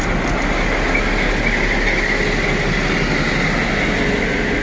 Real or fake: real